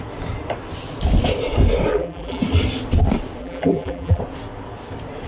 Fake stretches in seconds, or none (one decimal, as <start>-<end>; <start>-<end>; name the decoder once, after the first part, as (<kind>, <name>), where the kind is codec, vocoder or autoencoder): 1.9-2.4 (vocoder, BigVGAN v2); 3.4-4.2